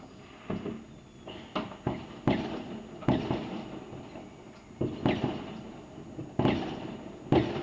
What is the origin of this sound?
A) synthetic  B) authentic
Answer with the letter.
B